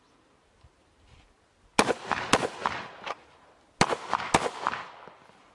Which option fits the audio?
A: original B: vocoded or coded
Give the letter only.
A